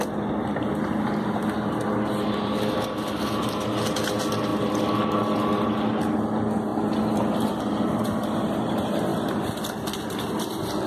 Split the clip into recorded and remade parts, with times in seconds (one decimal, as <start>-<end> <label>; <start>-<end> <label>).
0.0-10.9 recorded